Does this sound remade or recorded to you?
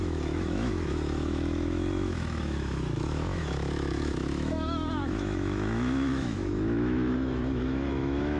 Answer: remade